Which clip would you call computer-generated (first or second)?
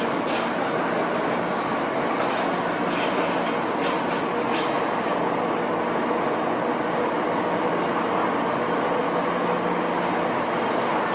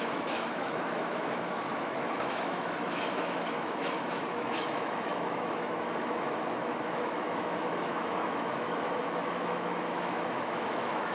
second